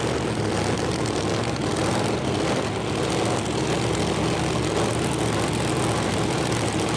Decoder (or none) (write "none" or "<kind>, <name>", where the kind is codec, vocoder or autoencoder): none